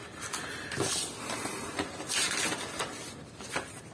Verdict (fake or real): real